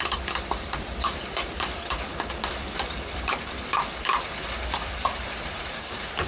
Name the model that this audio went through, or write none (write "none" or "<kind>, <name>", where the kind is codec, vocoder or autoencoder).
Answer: vocoder, BigVGAN v2